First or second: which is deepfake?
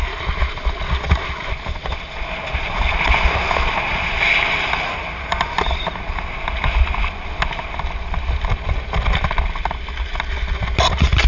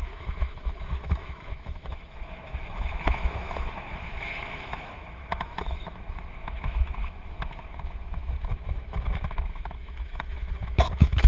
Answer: second